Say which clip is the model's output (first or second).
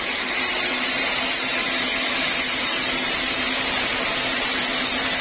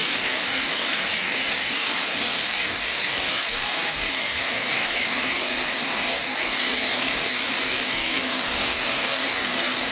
second